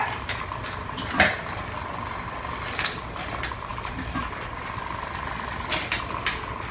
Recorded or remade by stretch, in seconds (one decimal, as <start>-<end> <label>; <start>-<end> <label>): 0.0-6.7 recorded

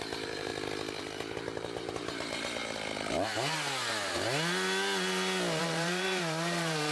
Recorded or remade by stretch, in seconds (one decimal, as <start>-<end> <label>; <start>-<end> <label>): 0.0-0.5 remade; 0.5-1.0 recorded; 1.0-2.6 remade; 2.6-5.6 recorded; 5.6-6.9 remade